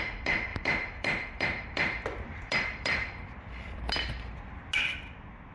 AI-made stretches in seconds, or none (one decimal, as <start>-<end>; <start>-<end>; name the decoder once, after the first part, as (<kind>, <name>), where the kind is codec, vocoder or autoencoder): 0.5-3.8 (vocoder, BigVGAN v2)